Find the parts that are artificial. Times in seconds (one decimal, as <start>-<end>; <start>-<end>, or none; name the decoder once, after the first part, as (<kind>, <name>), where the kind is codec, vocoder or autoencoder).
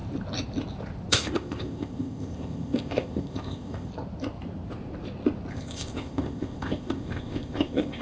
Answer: 1.1-3.9 (codec, ZipCodec); 5.5-8.0